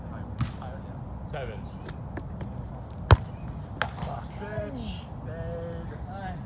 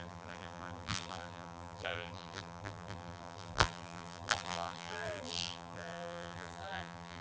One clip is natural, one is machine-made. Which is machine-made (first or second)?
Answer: second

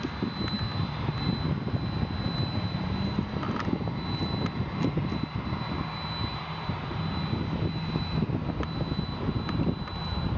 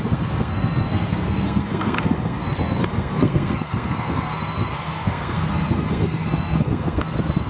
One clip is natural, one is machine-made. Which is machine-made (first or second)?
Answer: second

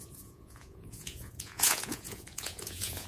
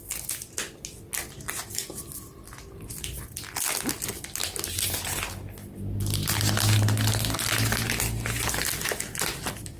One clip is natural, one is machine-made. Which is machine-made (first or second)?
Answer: first